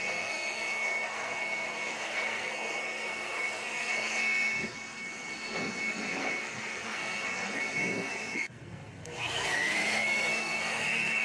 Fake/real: fake